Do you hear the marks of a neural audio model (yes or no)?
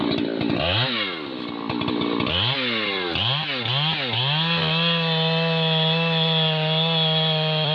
no